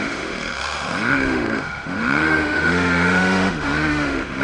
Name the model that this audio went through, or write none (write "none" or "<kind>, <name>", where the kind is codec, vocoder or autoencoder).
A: autoencoder, DAC-VAE